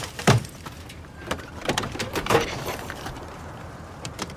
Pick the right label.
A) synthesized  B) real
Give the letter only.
A